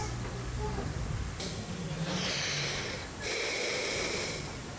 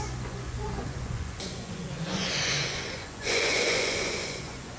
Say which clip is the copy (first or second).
second